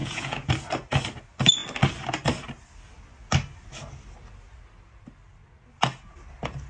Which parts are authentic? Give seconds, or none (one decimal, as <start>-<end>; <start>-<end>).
0.5-6.7